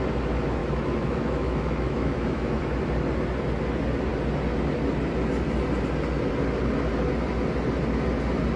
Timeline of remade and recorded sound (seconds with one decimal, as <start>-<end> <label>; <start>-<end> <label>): 0.0-0.6 recorded; 0.6-2.6 remade; 2.6-8.6 recorded